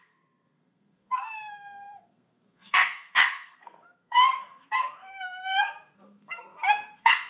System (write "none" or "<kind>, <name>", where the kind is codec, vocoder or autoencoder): codec, SNAC